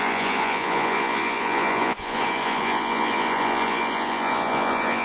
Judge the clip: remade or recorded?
remade